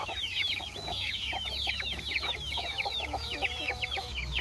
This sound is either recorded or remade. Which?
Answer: remade